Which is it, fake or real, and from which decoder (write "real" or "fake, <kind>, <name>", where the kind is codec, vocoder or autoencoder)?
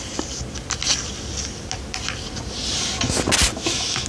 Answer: real